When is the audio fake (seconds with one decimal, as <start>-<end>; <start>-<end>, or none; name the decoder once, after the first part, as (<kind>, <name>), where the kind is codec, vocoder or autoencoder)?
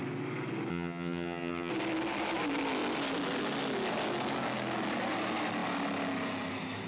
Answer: 0.7-1.7 (vocoder, HiFi-GAN)